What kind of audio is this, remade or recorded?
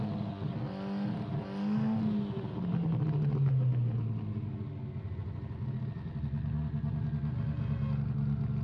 recorded